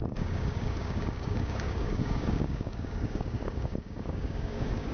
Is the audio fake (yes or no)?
yes